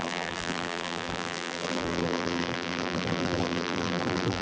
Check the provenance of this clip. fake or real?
fake